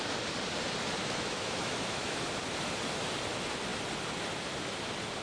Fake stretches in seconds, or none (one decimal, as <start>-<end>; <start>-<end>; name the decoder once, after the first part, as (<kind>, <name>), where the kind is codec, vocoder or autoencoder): 1.0-2.2 (autoencoder, DAC-VAE)